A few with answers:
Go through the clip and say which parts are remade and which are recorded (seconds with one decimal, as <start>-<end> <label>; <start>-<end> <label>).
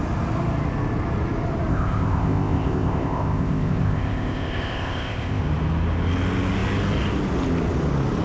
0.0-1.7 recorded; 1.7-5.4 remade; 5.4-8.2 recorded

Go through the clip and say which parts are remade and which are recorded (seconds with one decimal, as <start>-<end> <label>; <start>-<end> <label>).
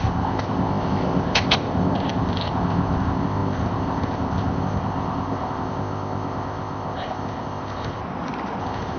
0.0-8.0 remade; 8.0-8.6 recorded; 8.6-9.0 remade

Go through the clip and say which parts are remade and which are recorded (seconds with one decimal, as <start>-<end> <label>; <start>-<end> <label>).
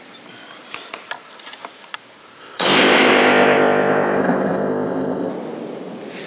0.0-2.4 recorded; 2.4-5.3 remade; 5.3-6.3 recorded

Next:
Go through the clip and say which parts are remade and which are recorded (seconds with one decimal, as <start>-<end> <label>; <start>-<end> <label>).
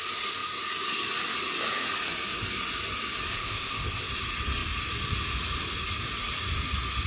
0.0-3.3 recorded; 3.3-4.1 remade; 4.1-7.1 recorded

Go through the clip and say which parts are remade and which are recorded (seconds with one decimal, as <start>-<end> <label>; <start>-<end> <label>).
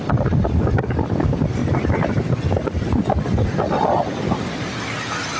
0.0-5.4 recorded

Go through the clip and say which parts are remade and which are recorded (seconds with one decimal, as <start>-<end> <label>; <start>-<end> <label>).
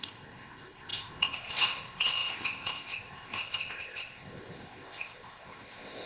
0.0-6.1 remade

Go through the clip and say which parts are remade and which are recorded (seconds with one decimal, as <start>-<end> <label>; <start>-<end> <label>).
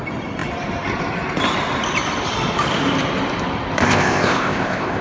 0.0-3.8 recorded; 3.8-5.0 remade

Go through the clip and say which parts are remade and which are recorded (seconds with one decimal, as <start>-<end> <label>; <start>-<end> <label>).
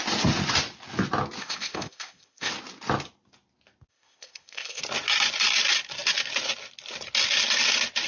0.0-1.4 recorded; 1.4-2.5 remade; 2.5-3.9 recorded; 3.9-4.8 remade; 4.8-8.1 recorded